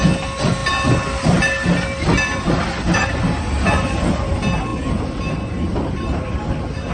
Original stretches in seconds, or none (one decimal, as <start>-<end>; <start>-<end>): 0.0-6.9